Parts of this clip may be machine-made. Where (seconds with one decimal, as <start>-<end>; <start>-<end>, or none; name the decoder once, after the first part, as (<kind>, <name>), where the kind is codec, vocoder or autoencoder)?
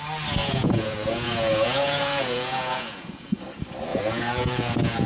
0.4-3.4 (vocoder, Vocos); 3.9-5.1